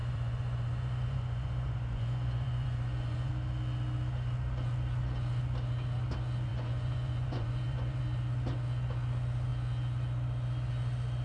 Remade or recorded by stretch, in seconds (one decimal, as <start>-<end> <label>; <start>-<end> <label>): 0.0-3.3 remade; 3.3-6.5 recorded; 6.5-8.0 remade; 8.0-11.2 recorded